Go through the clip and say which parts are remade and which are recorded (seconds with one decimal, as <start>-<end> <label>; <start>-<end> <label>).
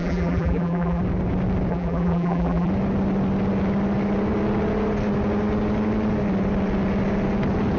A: 0.0-1.0 remade; 1.0-1.7 recorded; 1.7-2.7 remade; 2.7-7.8 recorded